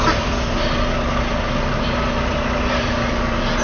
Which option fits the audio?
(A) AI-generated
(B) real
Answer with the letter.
B